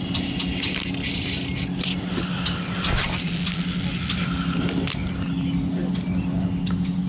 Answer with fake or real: real